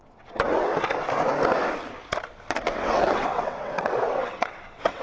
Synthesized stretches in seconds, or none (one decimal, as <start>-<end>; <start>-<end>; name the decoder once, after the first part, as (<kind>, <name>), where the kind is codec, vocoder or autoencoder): 0.0-0.7 (vocoder, WaveNeXt); 2.7-5.0